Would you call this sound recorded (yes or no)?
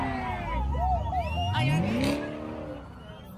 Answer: yes